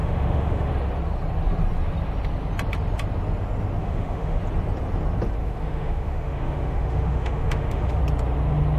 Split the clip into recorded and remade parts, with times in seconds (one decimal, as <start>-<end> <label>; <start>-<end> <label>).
0.0-0.7 remade; 0.7-3.8 recorded; 3.8-4.4 remade; 4.4-5.4 recorded; 5.4-8.0 remade; 8.0-8.8 recorded